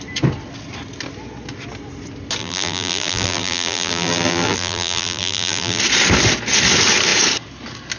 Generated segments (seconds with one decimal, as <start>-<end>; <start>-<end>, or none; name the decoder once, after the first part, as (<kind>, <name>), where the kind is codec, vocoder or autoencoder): 2.4-5.8 (vocoder, BigVGAN v2)